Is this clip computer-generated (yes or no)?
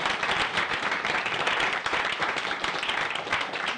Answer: yes